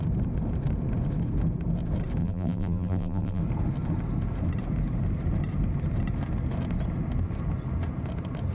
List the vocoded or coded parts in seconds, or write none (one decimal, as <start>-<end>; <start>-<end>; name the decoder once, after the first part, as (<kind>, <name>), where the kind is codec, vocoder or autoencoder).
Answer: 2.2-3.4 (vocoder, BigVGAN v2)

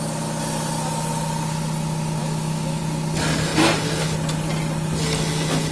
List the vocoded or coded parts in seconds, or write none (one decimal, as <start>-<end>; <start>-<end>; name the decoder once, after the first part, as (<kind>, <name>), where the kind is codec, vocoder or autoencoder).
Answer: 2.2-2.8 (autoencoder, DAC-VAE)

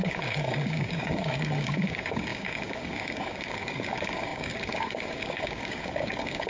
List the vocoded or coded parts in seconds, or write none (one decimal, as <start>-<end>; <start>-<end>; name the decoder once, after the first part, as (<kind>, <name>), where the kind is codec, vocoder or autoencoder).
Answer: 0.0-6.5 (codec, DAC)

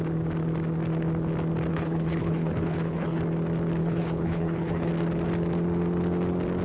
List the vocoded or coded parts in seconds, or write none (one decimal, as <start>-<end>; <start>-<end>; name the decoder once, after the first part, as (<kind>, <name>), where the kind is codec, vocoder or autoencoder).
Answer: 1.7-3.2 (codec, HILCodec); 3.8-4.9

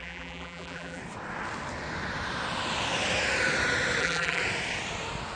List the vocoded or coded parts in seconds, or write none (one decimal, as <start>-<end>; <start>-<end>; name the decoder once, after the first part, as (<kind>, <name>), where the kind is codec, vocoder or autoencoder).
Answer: 0.0-1.0 (vocoder, BigVGAN v2); 4.0-4.4